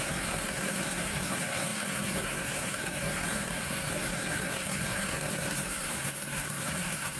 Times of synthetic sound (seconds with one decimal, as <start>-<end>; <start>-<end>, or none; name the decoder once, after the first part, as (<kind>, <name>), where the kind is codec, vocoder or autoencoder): 0.0-7.2 (codec, SNAC)